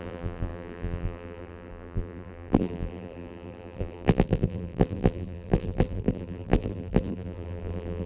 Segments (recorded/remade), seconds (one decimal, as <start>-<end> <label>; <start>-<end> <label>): 0.0-8.1 remade